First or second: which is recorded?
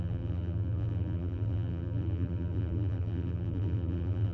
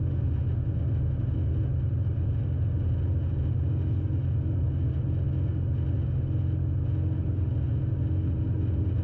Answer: second